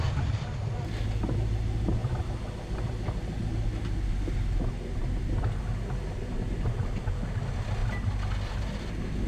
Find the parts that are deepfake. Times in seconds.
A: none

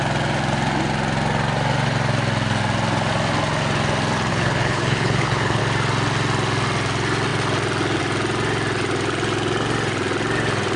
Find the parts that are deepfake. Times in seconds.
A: 4.3-5.6 (codec, HILCodec)

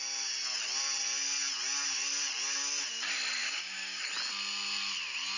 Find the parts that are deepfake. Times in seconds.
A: 3.4-4.0 (codec, DAC)

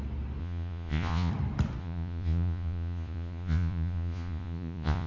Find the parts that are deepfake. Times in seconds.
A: 0.4-1.3 (vocoder, Vocos); 1.8-5.1

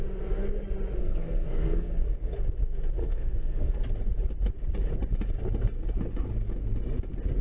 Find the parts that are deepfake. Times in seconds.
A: 1.0-2.3 (codec, SNAC); 3.0-3.8

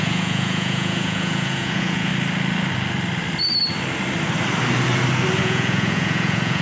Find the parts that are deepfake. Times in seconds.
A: 0.0-2.1 (vocoder, Vocos); 5.4-6.6